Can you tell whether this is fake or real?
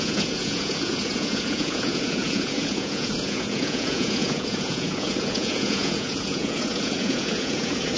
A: fake